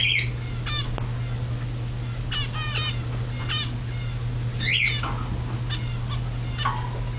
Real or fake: real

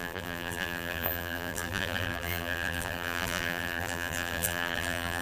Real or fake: fake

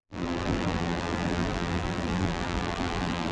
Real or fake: fake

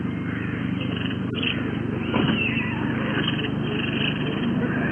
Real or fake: fake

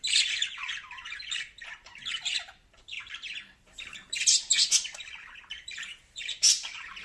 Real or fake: fake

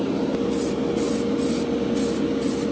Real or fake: real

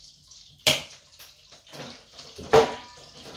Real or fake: fake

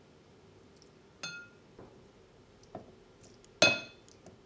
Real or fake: real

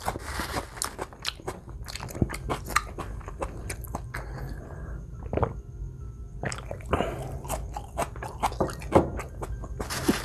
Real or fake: real